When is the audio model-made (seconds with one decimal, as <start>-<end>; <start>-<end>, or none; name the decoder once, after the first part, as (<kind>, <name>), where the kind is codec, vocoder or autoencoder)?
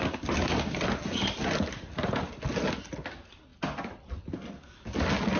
none